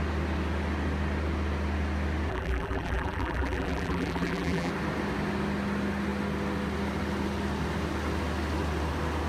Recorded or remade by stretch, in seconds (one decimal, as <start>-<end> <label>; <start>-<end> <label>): 0.0-2.3 recorded; 2.3-4.7 remade; 4.7-9.3 recorded